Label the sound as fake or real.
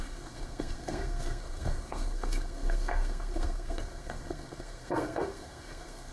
fake